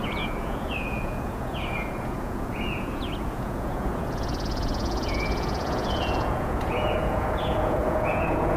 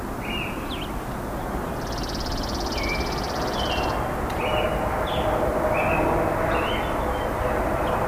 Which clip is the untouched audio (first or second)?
second